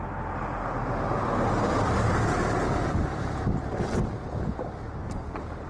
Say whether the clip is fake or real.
real